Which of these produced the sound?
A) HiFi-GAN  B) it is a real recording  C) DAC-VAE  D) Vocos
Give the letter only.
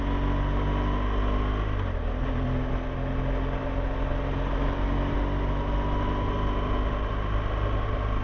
B